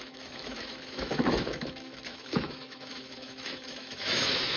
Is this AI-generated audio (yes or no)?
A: yes